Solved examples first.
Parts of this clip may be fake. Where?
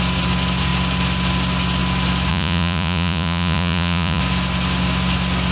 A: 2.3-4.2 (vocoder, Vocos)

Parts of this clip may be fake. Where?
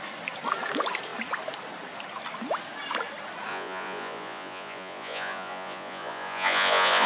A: 3.5-7.1 (vocoder, Vocos)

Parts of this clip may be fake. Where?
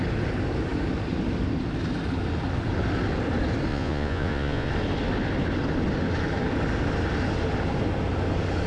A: 3.7-4.7 (vocoder, Vocos)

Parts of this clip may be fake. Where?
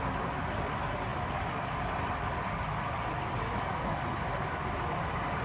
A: none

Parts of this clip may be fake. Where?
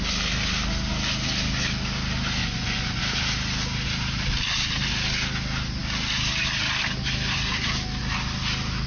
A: 2.4-3.0 (vocoder, Vocos)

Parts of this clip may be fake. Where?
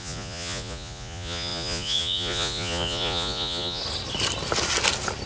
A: 0.0-3.8 (vocoder, Vocos)